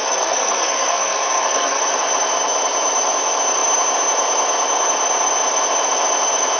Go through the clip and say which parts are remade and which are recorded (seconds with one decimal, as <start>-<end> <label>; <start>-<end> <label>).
0.0-1.8 remade; 1.8-6.6 recorded